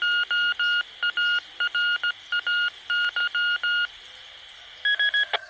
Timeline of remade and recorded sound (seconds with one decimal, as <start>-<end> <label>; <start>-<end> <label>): 0.0-5.5 recorded